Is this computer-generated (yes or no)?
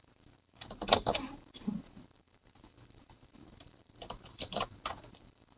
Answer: yes